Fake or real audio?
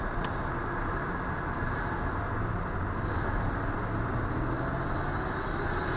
real